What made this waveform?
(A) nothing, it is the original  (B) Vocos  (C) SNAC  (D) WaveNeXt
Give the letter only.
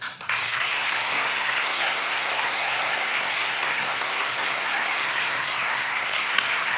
C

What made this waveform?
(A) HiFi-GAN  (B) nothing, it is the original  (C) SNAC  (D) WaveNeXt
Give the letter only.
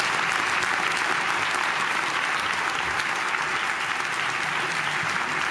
B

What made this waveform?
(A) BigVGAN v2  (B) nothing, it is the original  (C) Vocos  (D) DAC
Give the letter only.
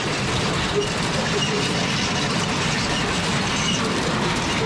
A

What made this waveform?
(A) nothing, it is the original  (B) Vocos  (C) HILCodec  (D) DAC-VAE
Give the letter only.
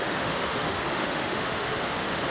D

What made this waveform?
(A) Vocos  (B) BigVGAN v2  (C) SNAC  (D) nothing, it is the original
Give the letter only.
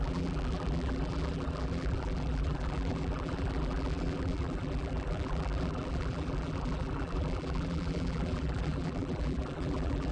B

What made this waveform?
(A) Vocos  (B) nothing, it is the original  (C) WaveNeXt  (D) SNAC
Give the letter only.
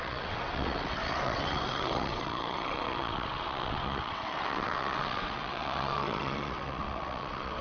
C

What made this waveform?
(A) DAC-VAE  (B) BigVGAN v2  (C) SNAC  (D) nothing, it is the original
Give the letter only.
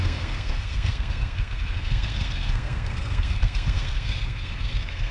C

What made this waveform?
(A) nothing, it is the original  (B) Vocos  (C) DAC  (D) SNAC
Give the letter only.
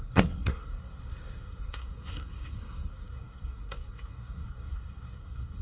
D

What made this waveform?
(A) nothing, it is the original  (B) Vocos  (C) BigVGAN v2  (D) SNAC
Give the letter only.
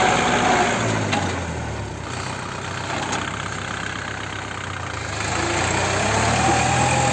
A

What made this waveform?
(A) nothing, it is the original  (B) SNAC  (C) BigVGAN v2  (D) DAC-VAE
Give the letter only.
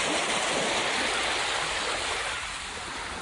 A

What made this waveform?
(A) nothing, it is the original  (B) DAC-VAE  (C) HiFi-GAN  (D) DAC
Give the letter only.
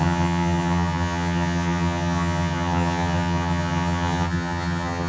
C